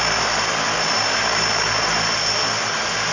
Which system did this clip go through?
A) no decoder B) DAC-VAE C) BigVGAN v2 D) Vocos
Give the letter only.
A